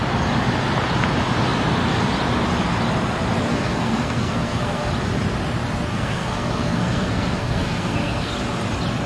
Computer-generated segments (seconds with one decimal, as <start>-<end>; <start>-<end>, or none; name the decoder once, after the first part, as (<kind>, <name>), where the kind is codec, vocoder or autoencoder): 3.5-4.9 (codec, SNAC); 5.9-8.3